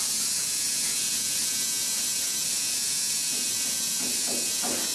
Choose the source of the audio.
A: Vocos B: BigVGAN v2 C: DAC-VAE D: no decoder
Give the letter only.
D